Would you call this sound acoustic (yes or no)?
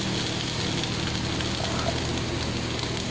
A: yes